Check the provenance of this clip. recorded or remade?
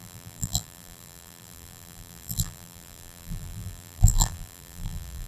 remade